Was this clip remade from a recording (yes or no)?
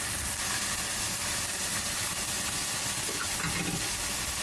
no